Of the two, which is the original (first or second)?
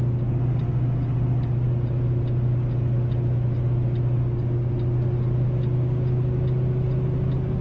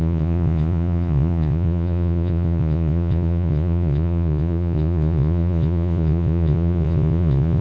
first